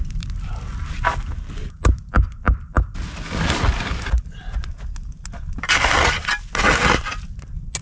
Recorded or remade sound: recorded